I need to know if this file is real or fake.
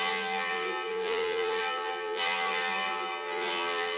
fake